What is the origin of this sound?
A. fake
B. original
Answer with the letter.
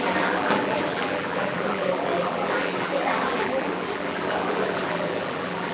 A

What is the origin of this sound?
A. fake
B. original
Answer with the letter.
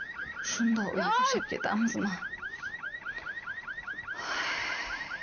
A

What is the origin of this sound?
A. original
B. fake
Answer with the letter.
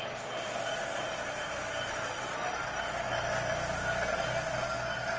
A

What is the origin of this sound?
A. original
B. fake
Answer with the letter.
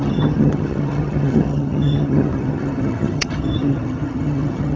B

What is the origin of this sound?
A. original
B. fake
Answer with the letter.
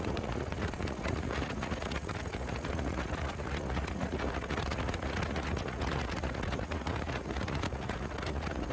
B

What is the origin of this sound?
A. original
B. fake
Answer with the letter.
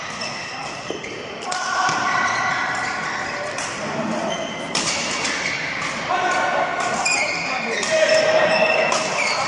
A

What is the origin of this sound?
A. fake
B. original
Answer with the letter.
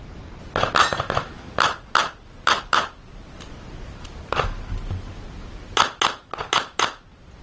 B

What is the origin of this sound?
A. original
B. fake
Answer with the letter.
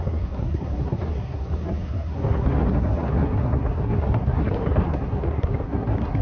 B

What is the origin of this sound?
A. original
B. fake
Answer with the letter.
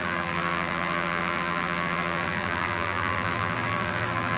B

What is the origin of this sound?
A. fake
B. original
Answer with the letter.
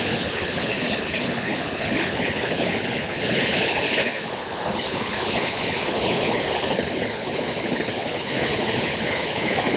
A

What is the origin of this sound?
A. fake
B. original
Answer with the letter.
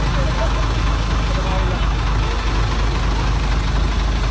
B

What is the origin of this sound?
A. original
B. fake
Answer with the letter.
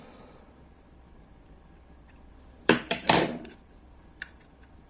B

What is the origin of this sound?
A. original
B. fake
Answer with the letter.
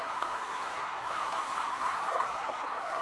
B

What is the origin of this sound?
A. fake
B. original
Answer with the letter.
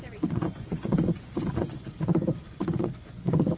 A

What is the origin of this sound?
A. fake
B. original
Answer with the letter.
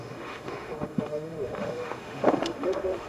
A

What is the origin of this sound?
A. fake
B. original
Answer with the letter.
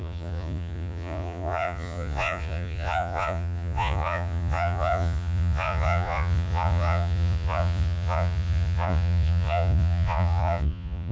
A